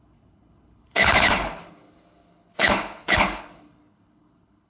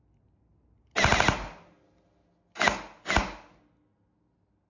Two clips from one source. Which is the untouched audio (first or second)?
second